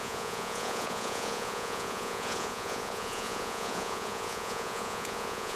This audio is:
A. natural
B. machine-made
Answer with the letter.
B